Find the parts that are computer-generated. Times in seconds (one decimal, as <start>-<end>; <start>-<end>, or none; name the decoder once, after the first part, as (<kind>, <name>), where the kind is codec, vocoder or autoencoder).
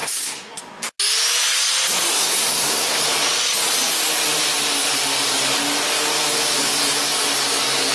0.0-0.6 (codec, SNAC); 2.1-3.0